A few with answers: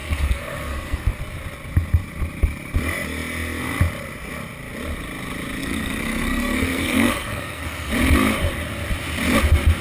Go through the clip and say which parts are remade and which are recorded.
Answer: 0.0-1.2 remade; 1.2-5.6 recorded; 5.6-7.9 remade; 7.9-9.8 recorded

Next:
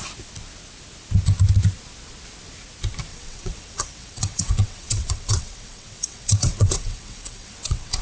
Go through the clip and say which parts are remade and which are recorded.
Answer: 0.0-3.1 recorded; 3.1-8.0 remade

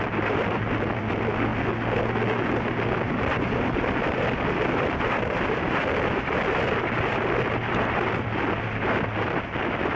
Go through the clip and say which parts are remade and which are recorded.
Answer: 0.0-1.5 remade; 1.5-2.7 recorded; 2.7-10.0 remade

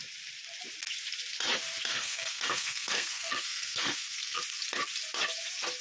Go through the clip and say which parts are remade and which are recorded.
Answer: 0.0-1.9 recorded; 1.9-4.4 remade; 4.4-5.8 recorded